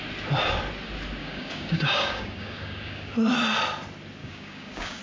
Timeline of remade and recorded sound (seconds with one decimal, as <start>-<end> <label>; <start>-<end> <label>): 0.0-1.2 recorded; 1.2-3.1 remade; 3.1-4.2 recorded; 4.2-5.0 remade